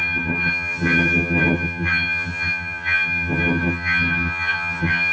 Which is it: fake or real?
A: fake